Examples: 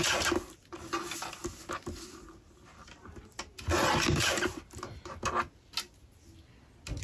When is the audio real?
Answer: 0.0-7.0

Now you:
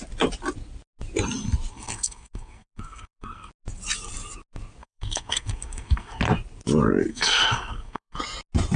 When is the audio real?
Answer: 0.0-1.7; 3.5-4.8; 6.2-7.1; 8.2-8.8

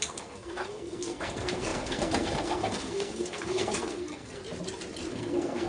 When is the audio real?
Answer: 4.4-5.1